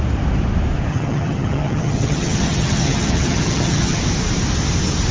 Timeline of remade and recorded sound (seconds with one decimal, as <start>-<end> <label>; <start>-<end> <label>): 0.0-0.9 recorded; 0.9-4.0 remade; 4.0-5.1 recorded